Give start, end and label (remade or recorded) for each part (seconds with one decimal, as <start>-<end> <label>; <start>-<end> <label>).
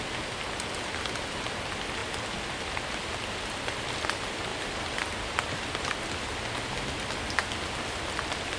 0.0-4.5 recorded; 4.5-5.4 remade; 5.4-8.6 recorded